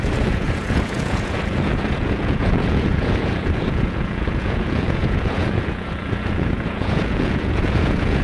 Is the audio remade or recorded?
remade